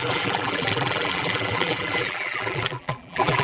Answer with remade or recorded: remade